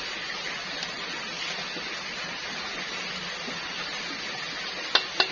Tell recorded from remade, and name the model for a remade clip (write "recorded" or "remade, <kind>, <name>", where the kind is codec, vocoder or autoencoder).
recorded